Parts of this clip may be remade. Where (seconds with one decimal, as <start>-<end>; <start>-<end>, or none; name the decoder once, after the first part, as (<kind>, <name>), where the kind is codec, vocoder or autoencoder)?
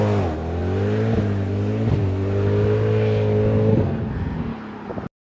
3.7-4.4 (codec, SNAC)